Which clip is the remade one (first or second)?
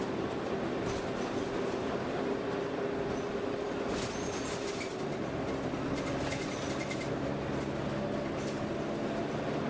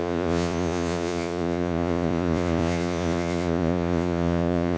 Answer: second